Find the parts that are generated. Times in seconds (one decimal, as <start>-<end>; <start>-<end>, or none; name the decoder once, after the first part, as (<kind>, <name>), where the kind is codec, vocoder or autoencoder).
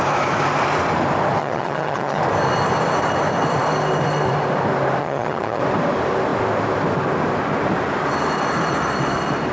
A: 1.4-2.2 (vocoder, HiFi-GAN); 5.0-5.6